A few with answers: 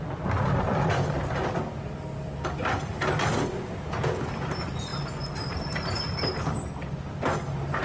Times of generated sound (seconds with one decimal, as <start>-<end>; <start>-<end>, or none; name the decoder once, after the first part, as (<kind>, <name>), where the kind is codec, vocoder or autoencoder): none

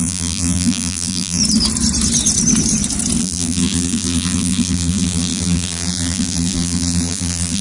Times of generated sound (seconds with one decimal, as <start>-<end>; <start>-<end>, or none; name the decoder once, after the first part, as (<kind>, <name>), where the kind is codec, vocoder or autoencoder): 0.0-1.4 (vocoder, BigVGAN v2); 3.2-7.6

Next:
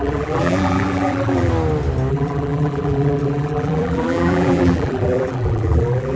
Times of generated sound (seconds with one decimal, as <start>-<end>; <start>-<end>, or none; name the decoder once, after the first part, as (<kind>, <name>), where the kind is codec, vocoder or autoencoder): 0.0-1.5 (vocoder, BigVGAN v2); 2.1-6.2

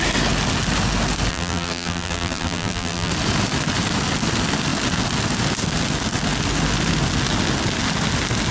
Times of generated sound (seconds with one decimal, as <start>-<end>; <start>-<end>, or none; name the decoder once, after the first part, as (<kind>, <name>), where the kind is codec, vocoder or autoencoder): 1.3-3.1 (vocoder, BigVGAN v2)

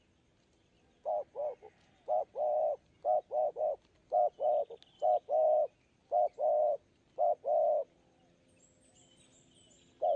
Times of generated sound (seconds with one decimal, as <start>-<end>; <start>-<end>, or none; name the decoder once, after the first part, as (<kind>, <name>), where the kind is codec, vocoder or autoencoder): none